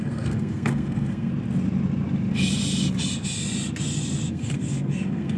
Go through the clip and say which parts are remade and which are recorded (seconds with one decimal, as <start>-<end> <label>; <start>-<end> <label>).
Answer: 0.0-1.3 remade; 1.3-4.3 recorded; 4.3-5.4 remade